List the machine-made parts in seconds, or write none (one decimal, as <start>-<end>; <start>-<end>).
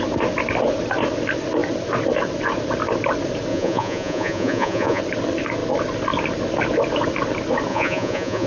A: 3.5-5.0; 7.7-8.5